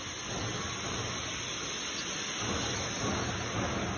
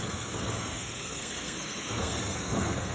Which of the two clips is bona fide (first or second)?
first